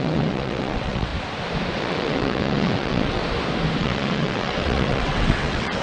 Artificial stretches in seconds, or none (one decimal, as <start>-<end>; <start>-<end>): 0.0-1.1; 1.8-3.2; 3.8-5.8

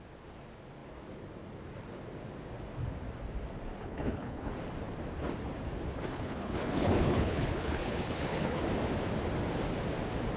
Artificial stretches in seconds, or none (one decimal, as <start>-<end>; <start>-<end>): 3.8-4.5; 6.1-8.6

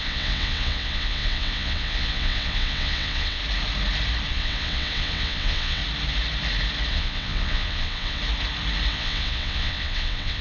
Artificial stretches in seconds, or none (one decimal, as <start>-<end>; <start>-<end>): 0.0-3.4; 4.3-5.8; 6.9-8.2; 8.9-10.4

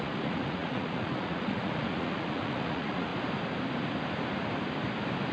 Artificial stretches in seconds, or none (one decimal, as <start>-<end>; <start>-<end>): 0.0-3.1

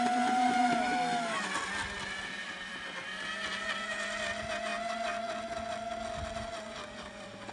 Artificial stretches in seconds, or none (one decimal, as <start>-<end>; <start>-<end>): none